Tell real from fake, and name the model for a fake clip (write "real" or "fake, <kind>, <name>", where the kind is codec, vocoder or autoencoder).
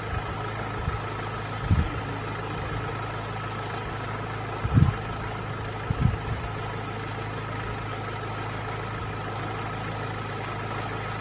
real